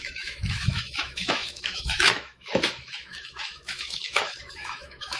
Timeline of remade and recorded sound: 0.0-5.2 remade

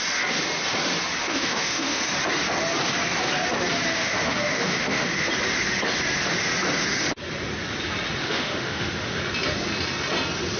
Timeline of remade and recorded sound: 0.0-1.2 recorded; 1.2-2.0 remade; 2.0-3.9 recorded; 3.9-5.3 remade; 5.3-8.2 recorded; 8.2-9.2 remade; 9.2-10.6 recorded

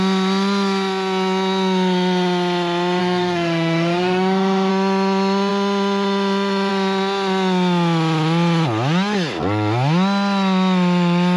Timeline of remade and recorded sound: 0.0-3.0 recorded; 3.0-4.7 remade; 4.7-11.4 recorded

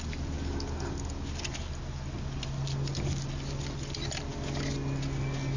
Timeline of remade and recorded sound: 0.0-5.6 recorded

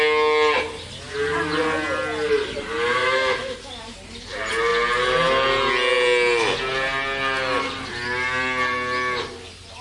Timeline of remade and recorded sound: 0.0-3.0 recorded; 3.0-3.7 remade; 3.7-9.8 recorded

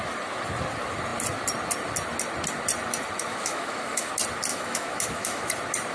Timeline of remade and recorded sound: 0.0-3.3 recorded; 3.3-4.1 remade; 4.1-4.5 recorded; 4.5-5.5 remade; 5.5-5.9 recorded

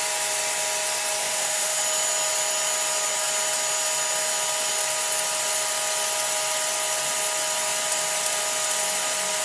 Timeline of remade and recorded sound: 0.0-1.2 recorded; 1.2-1.8 remade; 1.8-9.4 recorded

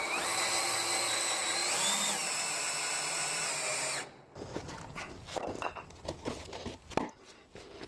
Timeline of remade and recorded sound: 0.0-7.9 recorded